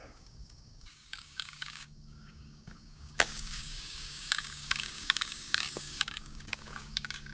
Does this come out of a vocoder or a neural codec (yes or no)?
yes